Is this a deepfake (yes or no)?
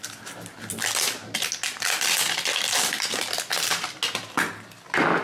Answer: no